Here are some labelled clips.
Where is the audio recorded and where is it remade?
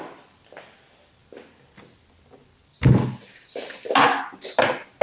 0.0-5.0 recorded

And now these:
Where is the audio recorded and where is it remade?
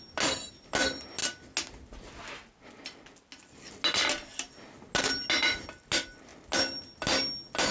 0.0-7.7 recorded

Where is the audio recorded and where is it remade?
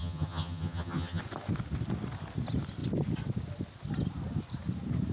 0.0-1.2 remade; 1.2-5.1 recorded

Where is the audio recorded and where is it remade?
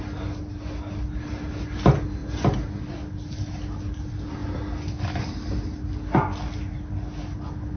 0.0-7.8 recorded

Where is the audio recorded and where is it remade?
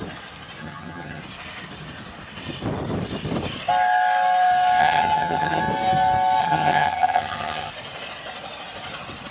0.0-0.6 recorded; 0.6-1.2 remade; 1.2-4.8 recorded; 4.8-5.6 remade; 5.6-6.4 recorded; 6.4-7.7 remade; 7.7-9.3 recorded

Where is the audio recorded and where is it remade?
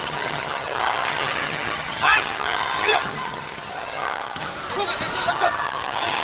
0.0-4.5 remade; 4.5-5.3 recorded; 5.3-6.2 remade